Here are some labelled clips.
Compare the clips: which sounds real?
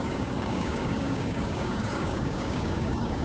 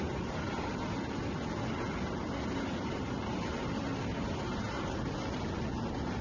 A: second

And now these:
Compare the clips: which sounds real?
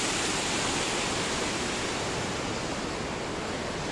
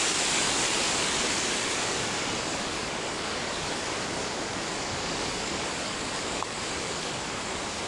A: first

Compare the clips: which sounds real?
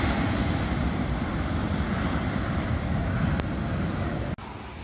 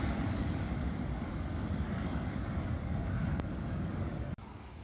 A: first